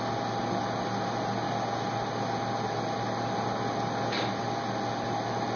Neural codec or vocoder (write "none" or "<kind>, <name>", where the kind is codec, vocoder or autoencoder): none